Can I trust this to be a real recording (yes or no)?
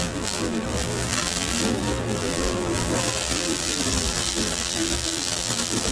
no